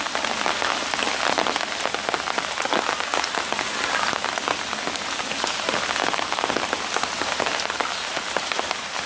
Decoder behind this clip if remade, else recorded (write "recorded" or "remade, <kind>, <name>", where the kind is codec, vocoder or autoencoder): recorded